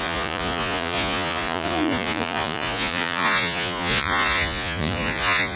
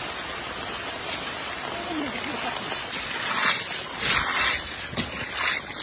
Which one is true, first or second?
second